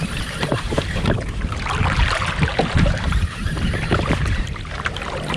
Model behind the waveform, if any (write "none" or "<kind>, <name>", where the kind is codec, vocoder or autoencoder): vocoder, BigVGAN v2